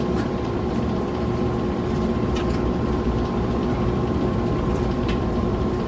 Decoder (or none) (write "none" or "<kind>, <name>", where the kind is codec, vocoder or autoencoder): vocoder, BigVGAN v2